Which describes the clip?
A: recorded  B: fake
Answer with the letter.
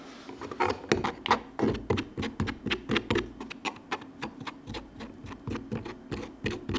A